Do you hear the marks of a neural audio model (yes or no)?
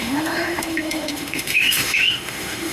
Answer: yes